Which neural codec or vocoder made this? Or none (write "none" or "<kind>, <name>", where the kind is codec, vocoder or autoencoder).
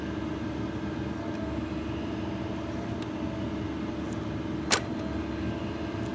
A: none